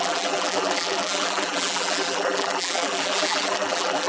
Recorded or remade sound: remade